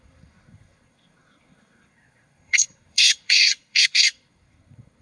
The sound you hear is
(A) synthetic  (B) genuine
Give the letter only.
A